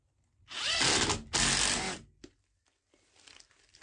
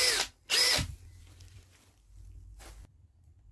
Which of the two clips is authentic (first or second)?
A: first